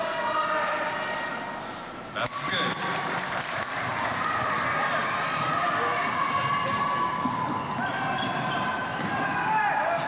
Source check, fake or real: real